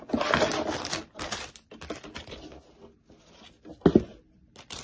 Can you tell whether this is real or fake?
real